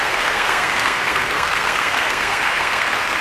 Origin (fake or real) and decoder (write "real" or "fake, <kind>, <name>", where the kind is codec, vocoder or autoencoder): fake, codec, SNAC